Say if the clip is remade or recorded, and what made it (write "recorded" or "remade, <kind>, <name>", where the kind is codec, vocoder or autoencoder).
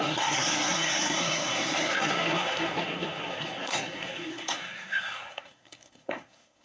remade, codec, SNAC